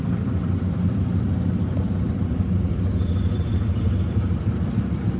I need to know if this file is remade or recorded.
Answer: remade